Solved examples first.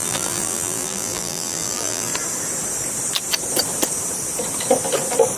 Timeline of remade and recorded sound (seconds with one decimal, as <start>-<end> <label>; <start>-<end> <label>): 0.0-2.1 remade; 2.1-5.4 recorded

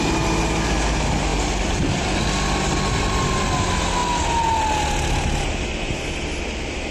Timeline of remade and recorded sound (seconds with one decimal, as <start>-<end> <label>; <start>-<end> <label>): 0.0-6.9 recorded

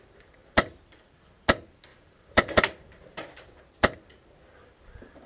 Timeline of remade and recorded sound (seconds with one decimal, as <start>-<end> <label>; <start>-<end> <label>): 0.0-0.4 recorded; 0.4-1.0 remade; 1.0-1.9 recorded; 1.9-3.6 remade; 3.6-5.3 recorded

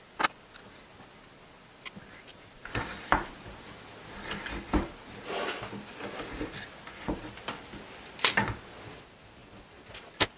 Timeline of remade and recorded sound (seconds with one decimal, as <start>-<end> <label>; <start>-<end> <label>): 0.0-2.3 recorded; 2.3-3.3 remade; 3.3-10.4 recorded

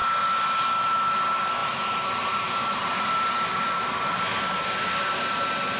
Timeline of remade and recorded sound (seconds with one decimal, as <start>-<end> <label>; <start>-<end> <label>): 0.0-1.6 recorded; 1.6-4.2 remade; 4.2-5.8 recorded